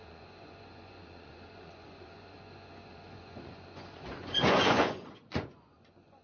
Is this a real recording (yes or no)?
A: no